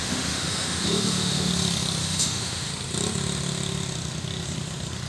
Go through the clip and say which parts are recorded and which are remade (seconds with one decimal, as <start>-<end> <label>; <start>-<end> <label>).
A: 0.0-1.5 remade; 1.5-2.0 recorded; 2.0-2.7 remade; 2.7-5.1 recorded